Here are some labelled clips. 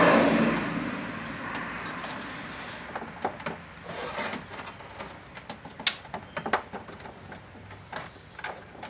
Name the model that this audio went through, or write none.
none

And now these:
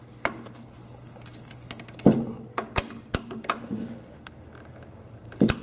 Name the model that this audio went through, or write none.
none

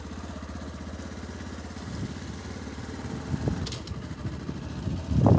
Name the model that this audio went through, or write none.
none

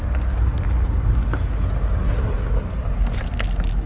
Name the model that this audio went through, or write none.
none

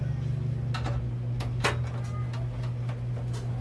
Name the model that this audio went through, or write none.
none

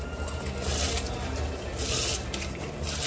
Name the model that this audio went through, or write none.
none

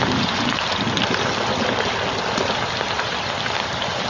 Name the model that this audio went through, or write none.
none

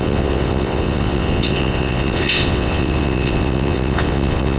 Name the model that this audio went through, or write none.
vocoder, WaveNeXt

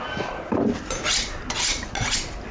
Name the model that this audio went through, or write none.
none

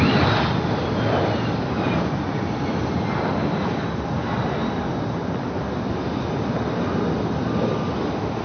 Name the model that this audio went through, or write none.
none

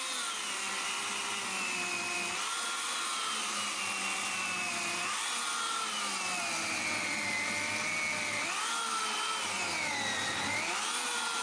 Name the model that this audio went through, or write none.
none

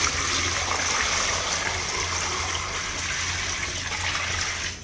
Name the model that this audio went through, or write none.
none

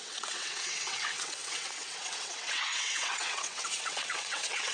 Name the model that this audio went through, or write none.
vocoder, WaveNeXt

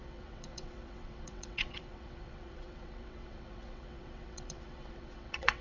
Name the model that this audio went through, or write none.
vocoder, WaveNeXt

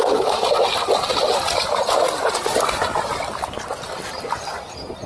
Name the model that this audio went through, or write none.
none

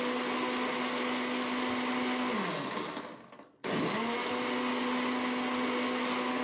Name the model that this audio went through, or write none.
none